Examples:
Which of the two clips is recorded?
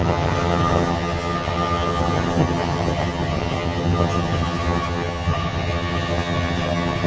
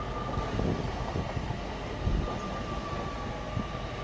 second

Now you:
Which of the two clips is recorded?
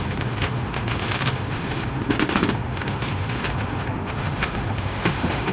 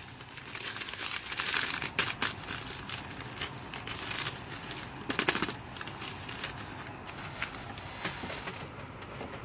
second